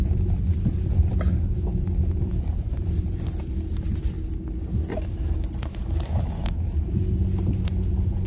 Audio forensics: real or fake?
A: real